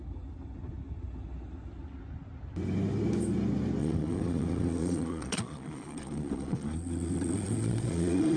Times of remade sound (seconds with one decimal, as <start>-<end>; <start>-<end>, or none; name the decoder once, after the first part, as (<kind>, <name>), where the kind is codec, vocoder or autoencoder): 3.8-8.4 (vocoder, Vocos)